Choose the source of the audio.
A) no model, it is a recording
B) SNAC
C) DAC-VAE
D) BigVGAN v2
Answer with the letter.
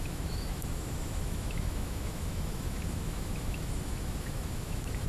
C